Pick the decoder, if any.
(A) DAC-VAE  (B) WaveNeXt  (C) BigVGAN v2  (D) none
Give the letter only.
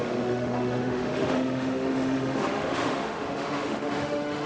A